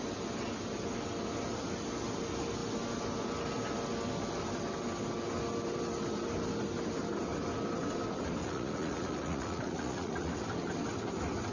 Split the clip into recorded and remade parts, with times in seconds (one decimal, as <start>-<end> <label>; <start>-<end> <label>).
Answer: 0.0-8.4 recorded; 8.4-10.3 remade; 10.3-11.5 recorded